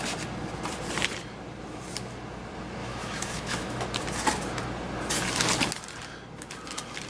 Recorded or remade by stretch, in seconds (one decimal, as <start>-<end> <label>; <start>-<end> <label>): 0.0-2.8 recorded; 2.8-3.8 remade; 3.8-7.1 recorded